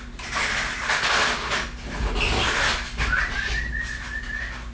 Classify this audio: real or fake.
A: real